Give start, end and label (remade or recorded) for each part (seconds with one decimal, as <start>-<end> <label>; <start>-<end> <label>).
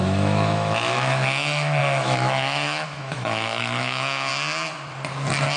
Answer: 0.0-4.3 remade; 4.3-5.6 recorded